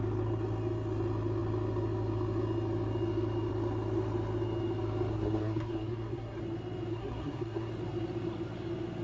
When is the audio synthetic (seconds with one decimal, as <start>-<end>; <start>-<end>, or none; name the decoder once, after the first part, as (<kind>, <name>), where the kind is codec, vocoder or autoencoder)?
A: 5.1-6.4 (codec, SNAC); 6.9-7.7